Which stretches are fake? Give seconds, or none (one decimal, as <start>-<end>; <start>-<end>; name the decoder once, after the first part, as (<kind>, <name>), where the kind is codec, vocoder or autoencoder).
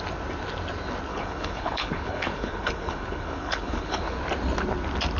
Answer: 1.1-4.2 (codec, HILCodec)